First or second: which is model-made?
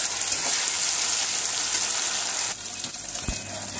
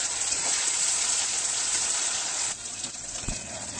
second